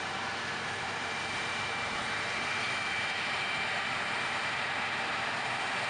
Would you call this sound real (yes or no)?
no